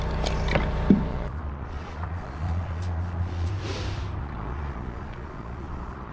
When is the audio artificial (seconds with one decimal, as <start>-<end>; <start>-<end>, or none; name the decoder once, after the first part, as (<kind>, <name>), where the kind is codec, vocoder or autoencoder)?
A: 1.1-3.5 (vocoder, Vocos); 4.2-6.1

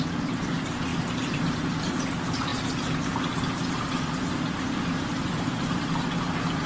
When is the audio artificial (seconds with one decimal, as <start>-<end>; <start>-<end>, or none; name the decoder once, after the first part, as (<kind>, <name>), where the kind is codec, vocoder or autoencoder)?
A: 0.9-1.7 (vocoder, BigVGAN v2); 2.5-6.7

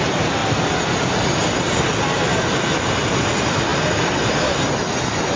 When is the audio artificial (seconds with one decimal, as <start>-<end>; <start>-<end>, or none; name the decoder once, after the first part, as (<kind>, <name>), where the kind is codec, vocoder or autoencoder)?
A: none

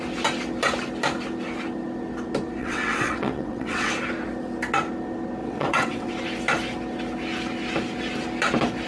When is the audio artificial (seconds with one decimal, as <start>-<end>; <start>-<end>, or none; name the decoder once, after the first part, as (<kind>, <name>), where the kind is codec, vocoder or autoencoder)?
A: 2.6-3.9 (vocoder, WaveNeXt); 5.4-6.1

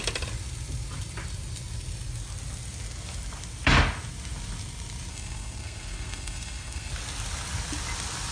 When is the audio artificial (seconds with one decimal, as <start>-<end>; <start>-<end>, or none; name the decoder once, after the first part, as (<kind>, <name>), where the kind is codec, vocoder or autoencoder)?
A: 5.1-6.9 (codec, SNAC)